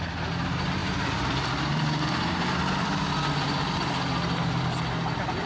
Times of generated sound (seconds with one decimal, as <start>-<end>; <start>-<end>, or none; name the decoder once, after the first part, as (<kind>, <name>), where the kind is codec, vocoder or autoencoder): 0.0-5.5 (vocoder, BigVGAN v2)